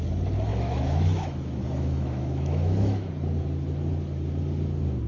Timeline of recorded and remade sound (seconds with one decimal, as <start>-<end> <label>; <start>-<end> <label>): 0.0-0.5 recorded; 0.5-3.1 remade; 3.1-5.1 recorded